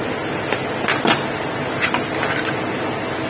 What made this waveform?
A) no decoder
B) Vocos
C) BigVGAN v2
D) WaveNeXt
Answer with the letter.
A